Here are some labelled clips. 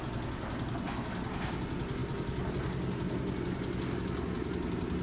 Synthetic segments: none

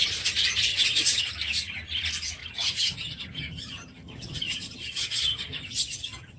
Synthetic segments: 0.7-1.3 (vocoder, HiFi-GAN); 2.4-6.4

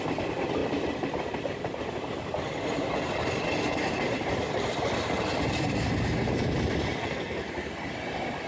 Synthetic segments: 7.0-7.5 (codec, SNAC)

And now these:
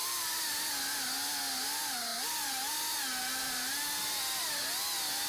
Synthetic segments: none